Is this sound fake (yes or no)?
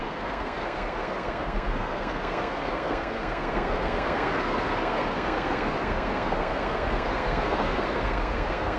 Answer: yes